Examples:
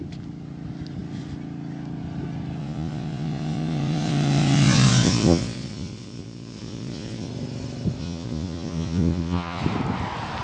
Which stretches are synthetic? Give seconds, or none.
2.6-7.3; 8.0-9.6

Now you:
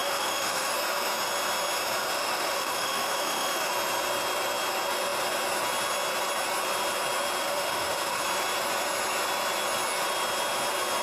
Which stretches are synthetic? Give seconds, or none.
0.0-0.7; 2.1-3.7; 7.4-8.2

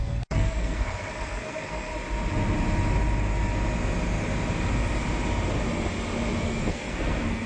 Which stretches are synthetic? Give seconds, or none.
0.0-1.9; 6.4-7.5

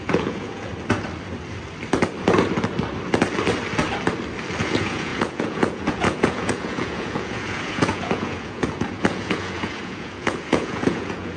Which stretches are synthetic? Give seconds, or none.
0.0-0.7; 4.6-11.4

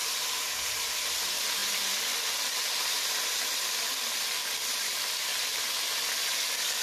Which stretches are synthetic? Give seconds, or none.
none

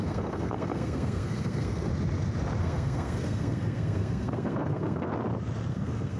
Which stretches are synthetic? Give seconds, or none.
0.0-1.9; 2.6-5.1; 5.7-6.2